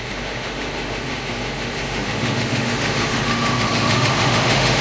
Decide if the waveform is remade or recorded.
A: remade